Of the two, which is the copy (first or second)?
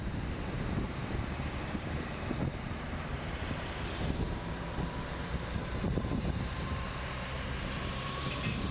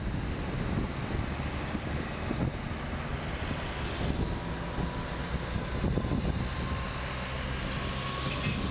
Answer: first